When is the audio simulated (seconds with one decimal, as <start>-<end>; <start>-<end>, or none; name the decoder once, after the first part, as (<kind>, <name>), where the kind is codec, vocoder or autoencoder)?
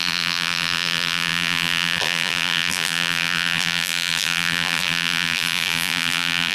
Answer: 0.0-6.5 (vocoder, BigVGAN v2)